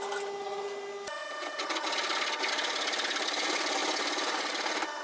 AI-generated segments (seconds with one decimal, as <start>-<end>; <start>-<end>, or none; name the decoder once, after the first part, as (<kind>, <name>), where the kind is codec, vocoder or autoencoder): none